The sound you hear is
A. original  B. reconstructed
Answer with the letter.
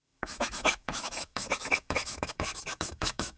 B